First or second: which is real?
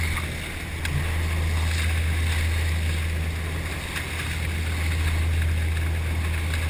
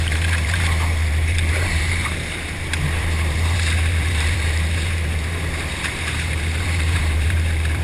first